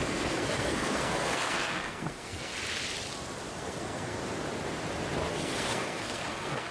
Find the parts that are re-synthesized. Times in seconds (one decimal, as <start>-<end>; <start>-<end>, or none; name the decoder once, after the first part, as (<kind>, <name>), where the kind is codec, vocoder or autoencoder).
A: 0.0-2.5 (codec, SNAC); 3.5-4.2; 5.3-6.7